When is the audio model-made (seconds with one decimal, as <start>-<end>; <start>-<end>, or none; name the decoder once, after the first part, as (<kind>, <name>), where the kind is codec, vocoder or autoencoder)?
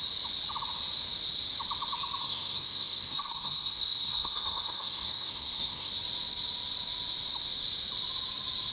2.2-5.9 (codec, SNAC)